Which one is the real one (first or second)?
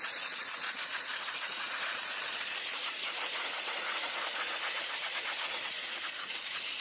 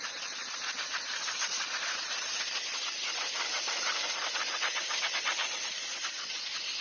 second